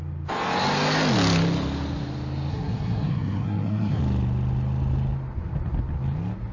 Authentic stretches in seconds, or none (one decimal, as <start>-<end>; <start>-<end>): 0.0-2.5; 4.0-6.5